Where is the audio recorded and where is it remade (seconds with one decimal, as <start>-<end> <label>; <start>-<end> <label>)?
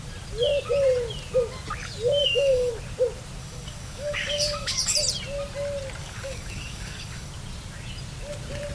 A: 0.0-2.2 recorded; 2.2-2.7 remade; 2.7-3.4 recorded; 3.4-4.8 remade; 4.8-6.0 recorded; 6.0-7.3 remade; 7.3-8.7 recorded